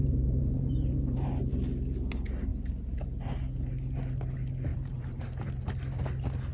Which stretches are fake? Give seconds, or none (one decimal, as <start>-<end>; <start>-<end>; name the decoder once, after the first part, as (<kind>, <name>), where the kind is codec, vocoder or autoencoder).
0.0-1.5 (vocoder, BigVGAN v2); 4.7-5.5